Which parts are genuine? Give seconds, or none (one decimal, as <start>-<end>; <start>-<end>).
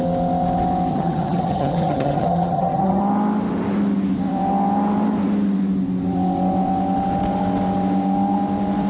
0.0-0.9; 3.0-8.9